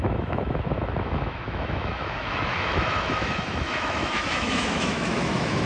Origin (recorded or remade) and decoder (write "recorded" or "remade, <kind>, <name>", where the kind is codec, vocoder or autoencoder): remade, autoencoder, DAC-VAE